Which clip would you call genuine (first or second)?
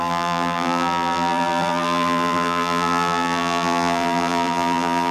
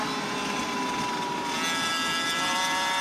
second